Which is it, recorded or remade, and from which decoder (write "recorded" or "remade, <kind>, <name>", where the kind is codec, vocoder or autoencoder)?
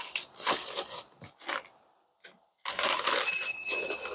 recorded